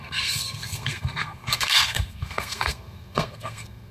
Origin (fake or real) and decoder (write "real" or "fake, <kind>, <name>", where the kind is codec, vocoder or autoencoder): fake, codec, SNAC